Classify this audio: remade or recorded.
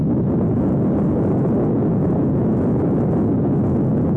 recorded